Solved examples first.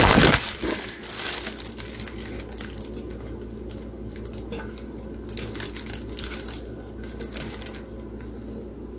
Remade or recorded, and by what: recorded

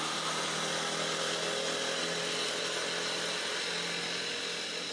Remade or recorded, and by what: recorded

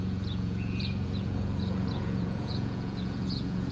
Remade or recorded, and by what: remade, vocoder, Vocos